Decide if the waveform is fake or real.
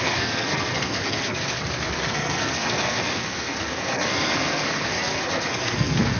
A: fake